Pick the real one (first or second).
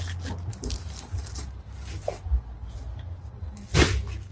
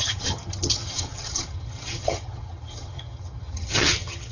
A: first